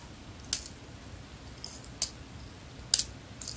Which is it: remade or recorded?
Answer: recorded